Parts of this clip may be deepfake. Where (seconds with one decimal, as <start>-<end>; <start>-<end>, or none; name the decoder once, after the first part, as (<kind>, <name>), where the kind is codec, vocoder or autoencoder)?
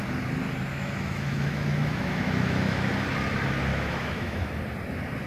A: 0.7-2.9 (autoencoder, DAC-VAE); 3.7-4.5